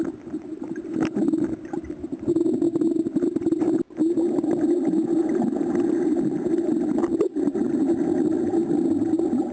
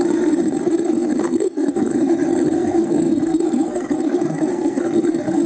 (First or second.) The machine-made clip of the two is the second